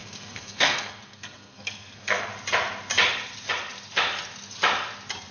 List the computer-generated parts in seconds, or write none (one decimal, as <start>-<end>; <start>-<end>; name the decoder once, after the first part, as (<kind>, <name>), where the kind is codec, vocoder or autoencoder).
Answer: 0.0-2.3 (codec, SNAC)